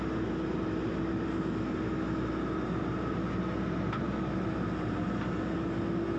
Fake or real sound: real